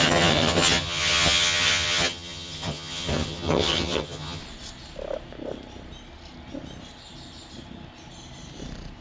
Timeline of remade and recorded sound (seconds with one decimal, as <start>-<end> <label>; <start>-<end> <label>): 0.0-4.4 remade; 4.4-9.0 recorded